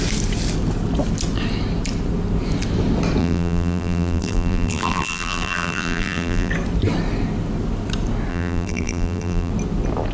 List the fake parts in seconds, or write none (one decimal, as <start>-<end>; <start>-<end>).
3.2-6.5; 8.3-9.5